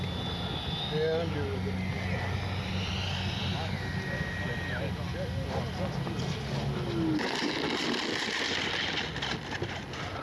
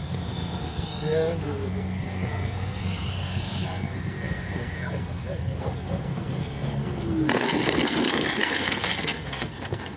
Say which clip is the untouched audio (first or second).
first